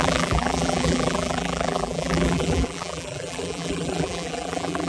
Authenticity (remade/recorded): remade